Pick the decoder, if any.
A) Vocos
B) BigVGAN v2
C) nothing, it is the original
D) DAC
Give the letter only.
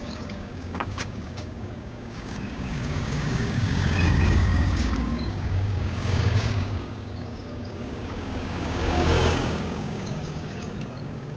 D